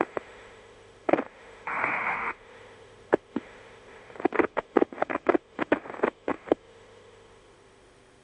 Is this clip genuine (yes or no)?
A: no